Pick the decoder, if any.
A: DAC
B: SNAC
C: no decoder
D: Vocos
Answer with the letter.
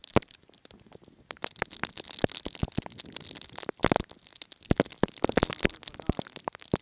C